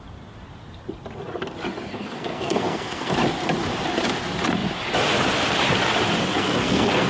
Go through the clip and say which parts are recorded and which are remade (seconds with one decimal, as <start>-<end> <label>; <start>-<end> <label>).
0.0-1.9 recorded; 1.9-3.1 remade; 3.1-6.3 recorded; 6.3-7.1 remade